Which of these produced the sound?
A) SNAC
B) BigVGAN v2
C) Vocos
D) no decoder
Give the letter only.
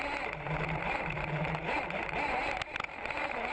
D